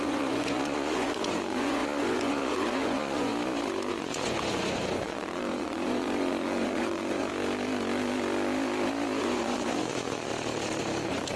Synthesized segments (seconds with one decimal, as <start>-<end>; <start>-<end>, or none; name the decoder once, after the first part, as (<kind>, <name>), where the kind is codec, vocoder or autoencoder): 0.0-3.3 (vocoder, Vocos); 3.9-7.3; 9.2-10.3; 11.0-11.4